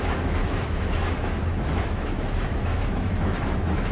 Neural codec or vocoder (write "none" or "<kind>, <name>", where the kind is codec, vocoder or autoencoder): autoencoder, DAC-VAE